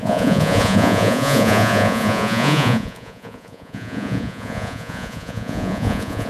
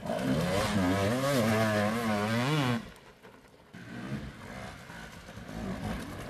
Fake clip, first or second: first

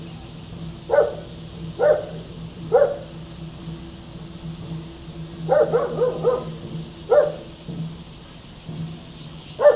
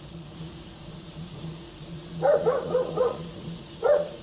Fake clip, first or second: second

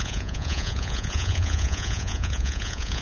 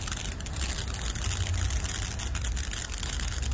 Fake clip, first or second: first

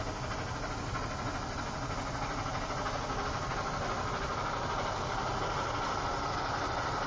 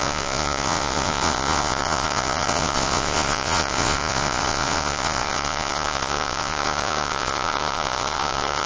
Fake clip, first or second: second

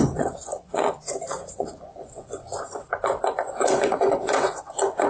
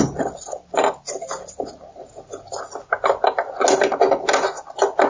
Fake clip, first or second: first